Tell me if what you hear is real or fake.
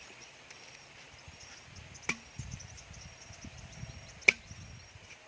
real